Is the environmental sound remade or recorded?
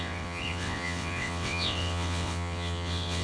remade